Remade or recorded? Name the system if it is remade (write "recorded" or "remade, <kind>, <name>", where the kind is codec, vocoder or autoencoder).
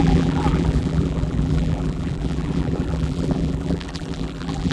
remade, vocoder, BigVGAN v2